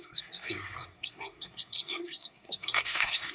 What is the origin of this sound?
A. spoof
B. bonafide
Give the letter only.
A